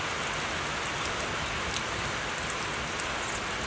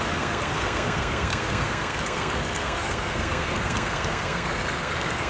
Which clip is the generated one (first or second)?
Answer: second